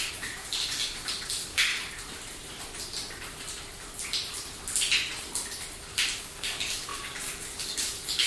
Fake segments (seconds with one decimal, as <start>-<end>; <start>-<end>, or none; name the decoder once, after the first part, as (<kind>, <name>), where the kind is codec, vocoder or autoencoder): 0.0-1.7 (codec, DAC); 6.2-8.3